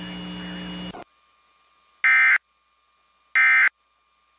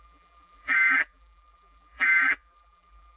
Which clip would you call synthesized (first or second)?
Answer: second